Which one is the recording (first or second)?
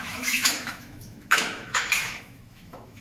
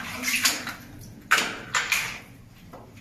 second